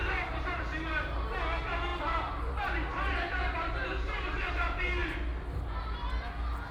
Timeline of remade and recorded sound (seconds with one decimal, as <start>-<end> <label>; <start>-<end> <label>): 0.0-0.6 remade; 0.6-1.9 recorded; 1.9-4.5 remade; 4.5-6.7 recorded